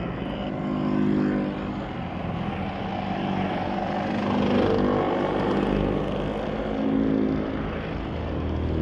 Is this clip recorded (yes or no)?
yes